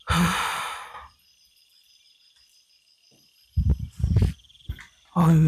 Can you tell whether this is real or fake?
real